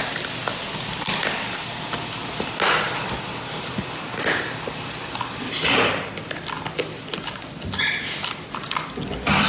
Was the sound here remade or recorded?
recorded